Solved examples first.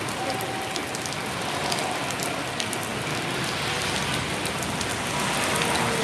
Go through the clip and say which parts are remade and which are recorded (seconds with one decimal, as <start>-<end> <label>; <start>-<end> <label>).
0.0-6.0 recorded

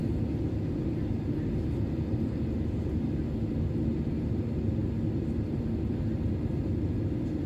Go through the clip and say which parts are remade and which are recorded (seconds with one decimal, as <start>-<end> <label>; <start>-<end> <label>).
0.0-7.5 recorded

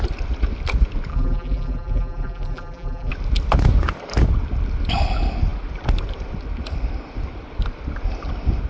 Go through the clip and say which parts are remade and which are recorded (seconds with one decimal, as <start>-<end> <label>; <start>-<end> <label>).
0.0-1.1 recorded; 1.1-3.1 remade; 3.1-8.7 recorded

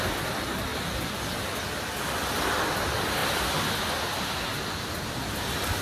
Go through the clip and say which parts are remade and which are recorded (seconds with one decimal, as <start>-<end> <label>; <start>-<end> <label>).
0.0-5.8 recorded

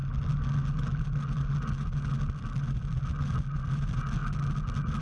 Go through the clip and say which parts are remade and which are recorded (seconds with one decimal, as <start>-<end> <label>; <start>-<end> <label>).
0.0-5.0 recorded

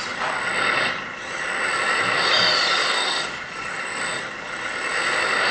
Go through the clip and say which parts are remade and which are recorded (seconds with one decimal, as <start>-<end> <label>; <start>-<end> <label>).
0.0-2.8 recorded; 2.8-4.0 remade; 4.0-5.5 recorded

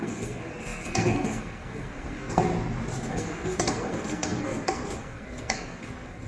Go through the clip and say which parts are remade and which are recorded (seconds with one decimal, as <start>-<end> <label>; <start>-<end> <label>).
0.0-2.5 remade; 2.5-3.1 recorded; 3.1-6.3 remade

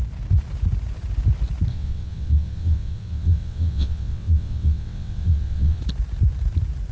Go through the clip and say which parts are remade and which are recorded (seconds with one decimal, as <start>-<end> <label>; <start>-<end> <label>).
0.0-1.7 recorded; 1.7-5.8 remade; 5.8-6.9 recorded